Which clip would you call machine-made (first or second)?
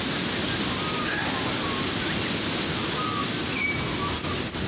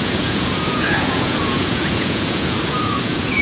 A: second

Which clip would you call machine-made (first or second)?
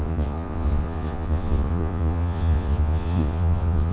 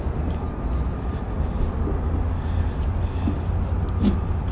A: first